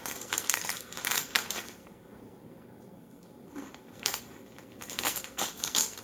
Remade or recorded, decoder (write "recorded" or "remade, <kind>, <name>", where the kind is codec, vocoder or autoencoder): remade, codec, SNAC